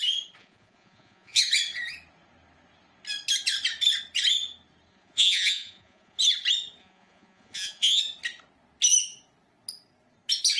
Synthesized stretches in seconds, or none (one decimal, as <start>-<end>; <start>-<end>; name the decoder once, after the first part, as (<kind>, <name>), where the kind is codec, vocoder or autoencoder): 0.4-1.4 (vocoder, Vocos); 4.9-6.2; 6.8-8.0